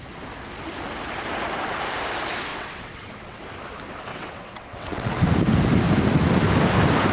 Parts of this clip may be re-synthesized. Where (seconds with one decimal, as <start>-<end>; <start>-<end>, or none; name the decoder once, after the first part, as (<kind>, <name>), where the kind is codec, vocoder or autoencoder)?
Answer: 2.5-3.4 (vocoder, WaveNeXt); 4.1-5.2